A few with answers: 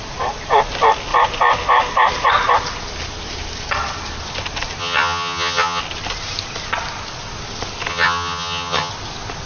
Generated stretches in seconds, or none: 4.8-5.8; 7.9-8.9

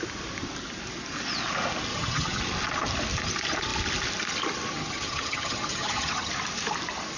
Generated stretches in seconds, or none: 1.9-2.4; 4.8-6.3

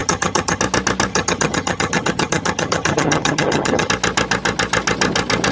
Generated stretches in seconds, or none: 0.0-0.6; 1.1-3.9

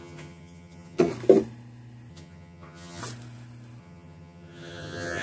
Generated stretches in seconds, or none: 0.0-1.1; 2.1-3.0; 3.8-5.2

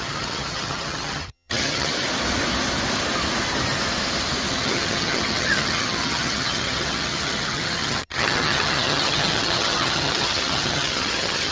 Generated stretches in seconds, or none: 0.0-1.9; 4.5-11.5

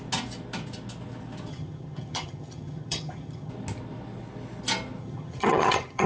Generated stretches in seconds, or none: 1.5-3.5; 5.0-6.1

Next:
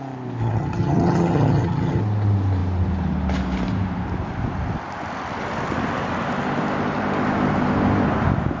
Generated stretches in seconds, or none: 0.4-2.0

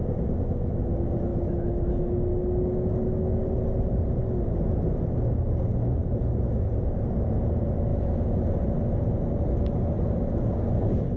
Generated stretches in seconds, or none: none